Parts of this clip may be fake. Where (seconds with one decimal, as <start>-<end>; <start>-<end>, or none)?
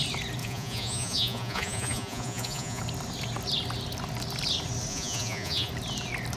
0.4-2.8; 4.9-5.7